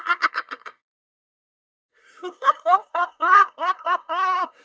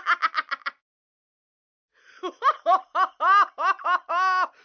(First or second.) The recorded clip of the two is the second